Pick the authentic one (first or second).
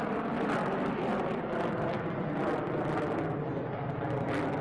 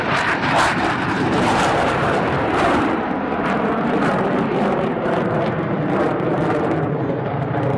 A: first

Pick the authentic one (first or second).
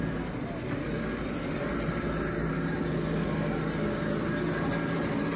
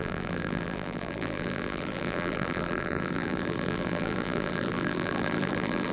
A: first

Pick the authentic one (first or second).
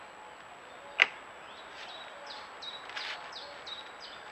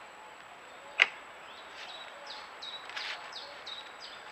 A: first